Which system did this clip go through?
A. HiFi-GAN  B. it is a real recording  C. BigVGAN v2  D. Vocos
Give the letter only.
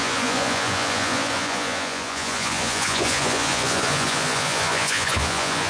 D